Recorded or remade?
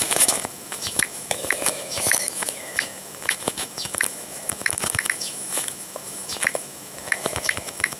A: remade